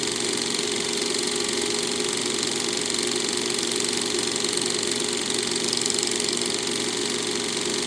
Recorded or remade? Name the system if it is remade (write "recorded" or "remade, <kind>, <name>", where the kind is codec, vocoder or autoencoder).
recorded